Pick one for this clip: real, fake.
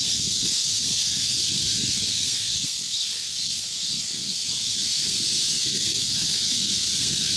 fake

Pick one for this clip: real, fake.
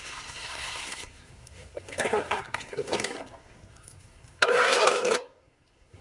fake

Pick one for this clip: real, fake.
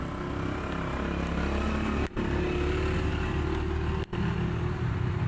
real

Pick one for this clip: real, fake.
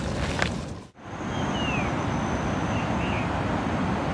real